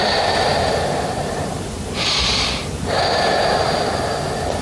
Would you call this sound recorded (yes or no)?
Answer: yes